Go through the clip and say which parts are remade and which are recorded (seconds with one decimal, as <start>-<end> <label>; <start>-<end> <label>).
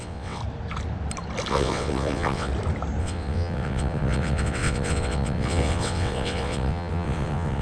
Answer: 0.0-0.4 remade; 0.4-1.5 recorded; 1.5-2.5 remade; 2.5-3.0 recorded; 3.0-7.6 remade